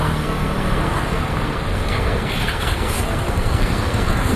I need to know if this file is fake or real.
fake